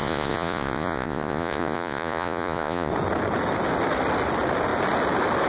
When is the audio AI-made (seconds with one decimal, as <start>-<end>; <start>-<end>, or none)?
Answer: 0.0-2.9